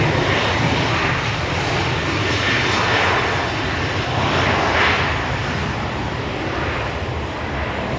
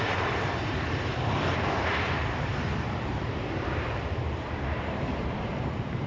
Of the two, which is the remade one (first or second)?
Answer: second